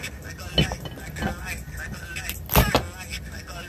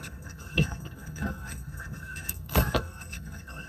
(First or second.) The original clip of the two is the first